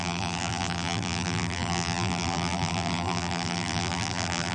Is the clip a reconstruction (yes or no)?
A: yes